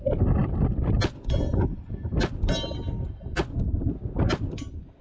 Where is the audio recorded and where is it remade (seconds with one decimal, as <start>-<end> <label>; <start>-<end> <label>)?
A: 0.0-5.0 recorded